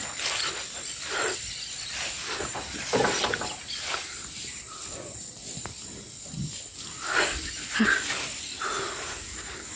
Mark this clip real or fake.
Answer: real